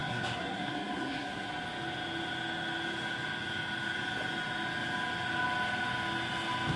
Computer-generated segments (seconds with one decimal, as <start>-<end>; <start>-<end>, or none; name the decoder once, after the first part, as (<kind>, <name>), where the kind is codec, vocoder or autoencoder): 0.0-1.5 (codec, SNAC)

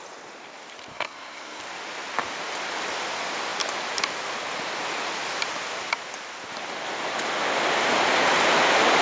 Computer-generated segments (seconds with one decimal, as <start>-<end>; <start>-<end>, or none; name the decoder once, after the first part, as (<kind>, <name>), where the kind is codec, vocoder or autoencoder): 0.9-1.6 (codec, SNAC)

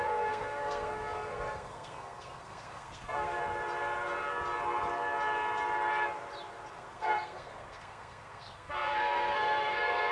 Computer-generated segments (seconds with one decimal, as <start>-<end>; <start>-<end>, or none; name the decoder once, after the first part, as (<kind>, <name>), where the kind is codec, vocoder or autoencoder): 0.0-3.4 (codec, SNAC); 6.7-10.1

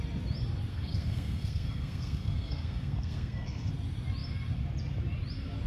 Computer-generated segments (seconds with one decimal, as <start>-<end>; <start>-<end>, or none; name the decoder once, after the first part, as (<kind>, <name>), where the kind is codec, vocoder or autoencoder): 0.7-3.7 (codec, SNAC)

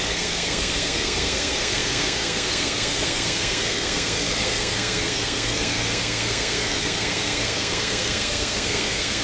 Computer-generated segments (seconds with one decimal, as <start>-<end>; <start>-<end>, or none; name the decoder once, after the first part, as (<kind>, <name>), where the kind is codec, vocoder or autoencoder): 0.0-9.2 (codec, SNAC)

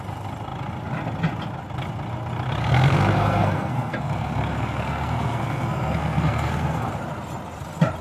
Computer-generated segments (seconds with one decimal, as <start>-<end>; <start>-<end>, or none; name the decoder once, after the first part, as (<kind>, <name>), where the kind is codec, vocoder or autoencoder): 2.6-6.9 (codec, SNAC)